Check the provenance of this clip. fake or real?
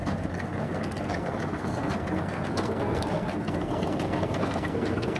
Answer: fake